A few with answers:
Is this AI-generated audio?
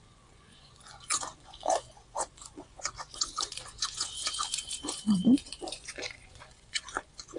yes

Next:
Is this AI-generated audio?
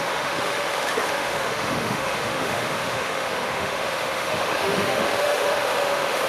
yes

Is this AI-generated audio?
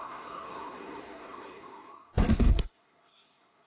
yes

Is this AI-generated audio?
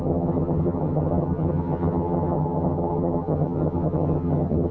yes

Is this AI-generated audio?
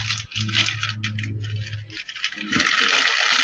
no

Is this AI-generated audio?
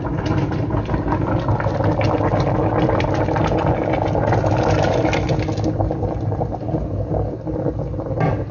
no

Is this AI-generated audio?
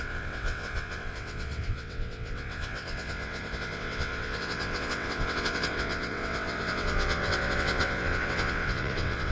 yes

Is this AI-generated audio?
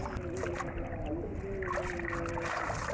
no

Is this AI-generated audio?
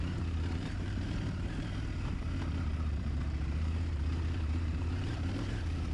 yes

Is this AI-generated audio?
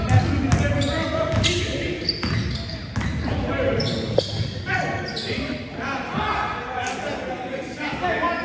no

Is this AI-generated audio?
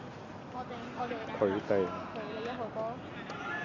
no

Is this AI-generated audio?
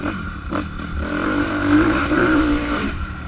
yes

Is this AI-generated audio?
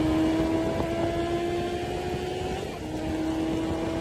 no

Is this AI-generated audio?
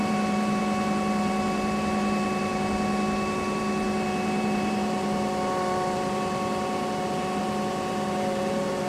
yes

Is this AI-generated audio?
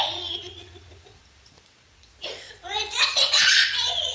yes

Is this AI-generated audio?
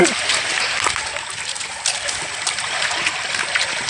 no